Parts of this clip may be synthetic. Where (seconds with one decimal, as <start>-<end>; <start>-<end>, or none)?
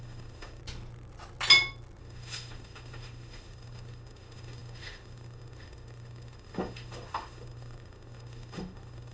0.0-0.6; 2.0-9.1